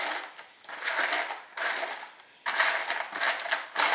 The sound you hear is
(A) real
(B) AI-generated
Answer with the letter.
A